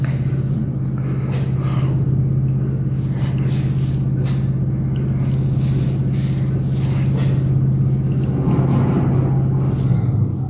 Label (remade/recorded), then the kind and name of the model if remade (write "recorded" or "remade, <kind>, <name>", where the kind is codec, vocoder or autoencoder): recorded